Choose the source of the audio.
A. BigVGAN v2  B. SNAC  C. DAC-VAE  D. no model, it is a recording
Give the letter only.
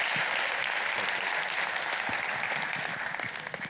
D